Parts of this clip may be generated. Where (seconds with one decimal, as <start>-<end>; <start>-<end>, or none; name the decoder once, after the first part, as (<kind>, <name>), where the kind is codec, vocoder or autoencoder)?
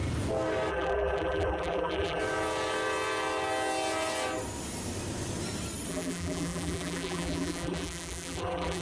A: 0.7-2.2 (vocoder, BigVGAN v2); 5.9-8.8